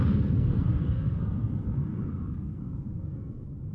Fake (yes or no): yes